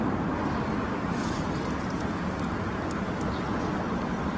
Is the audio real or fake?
real